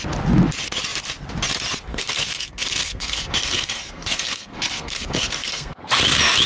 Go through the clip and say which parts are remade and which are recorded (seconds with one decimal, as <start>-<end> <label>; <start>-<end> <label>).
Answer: 0.0-1.9 recorded; 1.9-5.8 remade; 5.8-6.5 recorded